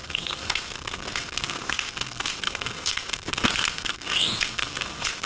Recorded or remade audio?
remade